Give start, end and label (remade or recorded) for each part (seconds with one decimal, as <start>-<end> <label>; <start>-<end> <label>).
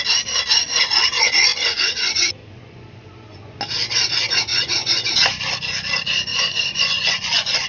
0.0-1.5 recorded; 1.5-3.6 remade; 3.6-4.5 recorded; 4.5-5.1 remade; 5.1-6.3 recorded; 6.3-7.7 remade